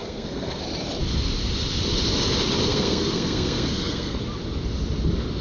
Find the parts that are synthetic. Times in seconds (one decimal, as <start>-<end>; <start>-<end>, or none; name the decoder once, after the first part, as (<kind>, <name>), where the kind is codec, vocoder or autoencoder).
0.0-0.6 (codec, SNAC); 2.7-4.2